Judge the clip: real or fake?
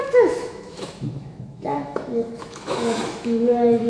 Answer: fake